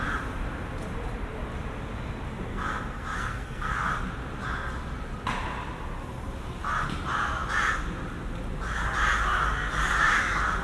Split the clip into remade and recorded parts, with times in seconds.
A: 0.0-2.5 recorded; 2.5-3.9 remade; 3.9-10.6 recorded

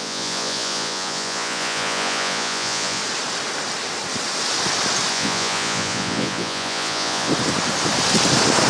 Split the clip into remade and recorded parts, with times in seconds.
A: 0.0-3.0 remade; 3.0-5.1 recorded; 5.1-7.3 remade; 7.3-8.7 recorded

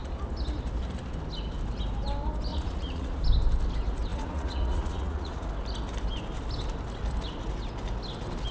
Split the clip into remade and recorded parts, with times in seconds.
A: 0.0-2.5 recorded; 2.5-3.2 remade; 3.2-4.1 recorded; 4.1-5.5 remade; 5.5-8.5 recorded

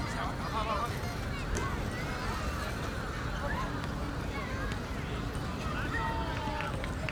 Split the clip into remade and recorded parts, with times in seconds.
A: 0.0-7.1 recorded

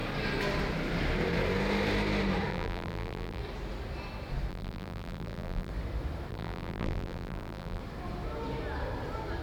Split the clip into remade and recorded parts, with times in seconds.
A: 0.0-2.5 recorded; 2.5-3.4 remade; 3.4-4.5 recorded; 4.5-5.7 remade; 5.7-6.3 recorded; 6.3-7.8 remade; 7.8-9.4 recorded

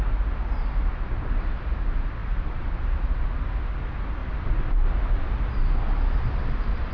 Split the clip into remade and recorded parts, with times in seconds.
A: 0.0-6.9 recorded

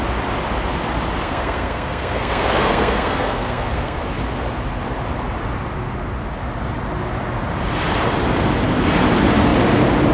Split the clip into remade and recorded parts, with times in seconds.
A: 0.0-1.2 recorded; 1.2-4.0 remade; 4.0-10.1 recorded

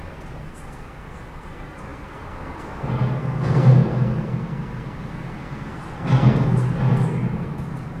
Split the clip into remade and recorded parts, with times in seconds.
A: 0.0-8.0 remade